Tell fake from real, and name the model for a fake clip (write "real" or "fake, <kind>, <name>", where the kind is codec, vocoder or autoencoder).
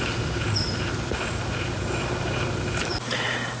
real